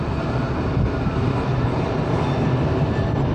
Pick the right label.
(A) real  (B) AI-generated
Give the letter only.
A